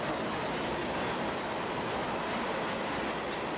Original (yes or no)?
yes